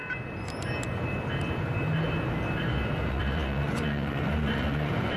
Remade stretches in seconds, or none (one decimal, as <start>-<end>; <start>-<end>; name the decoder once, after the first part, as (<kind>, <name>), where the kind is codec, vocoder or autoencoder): 3.1-5.2 (vocoder, Vocos)